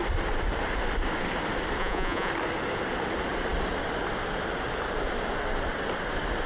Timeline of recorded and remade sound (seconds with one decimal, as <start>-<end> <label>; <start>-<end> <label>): 0.0-1.8 recorded; 1.8-2.3 remade; 2.3-6.5 recorded